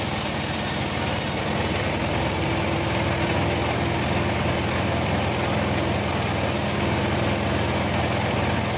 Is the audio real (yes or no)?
yes